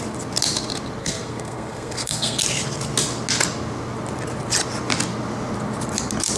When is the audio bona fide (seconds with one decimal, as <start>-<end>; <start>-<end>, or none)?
0.0-1.0; 2.4-6.4